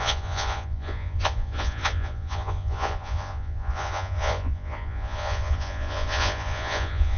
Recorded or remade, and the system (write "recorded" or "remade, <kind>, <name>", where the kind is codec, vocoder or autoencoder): remade, vocoder, Vocos